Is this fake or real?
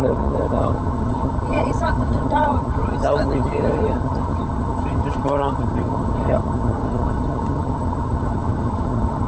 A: fake